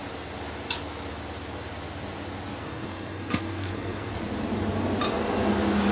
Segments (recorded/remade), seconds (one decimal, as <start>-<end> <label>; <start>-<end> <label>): 0.0-2.6 recorded; 2.6-4.1 remade; 4.1-5.9 recorded